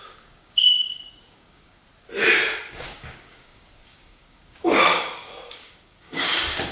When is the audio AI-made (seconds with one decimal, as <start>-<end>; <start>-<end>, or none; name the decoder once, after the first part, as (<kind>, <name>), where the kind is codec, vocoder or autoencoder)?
0.0-1.8 (codec, DAC); 2.6-6.7